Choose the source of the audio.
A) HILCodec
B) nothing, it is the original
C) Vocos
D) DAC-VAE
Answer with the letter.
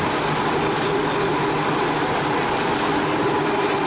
B